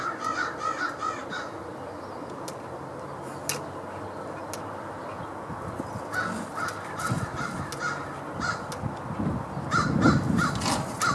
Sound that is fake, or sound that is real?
real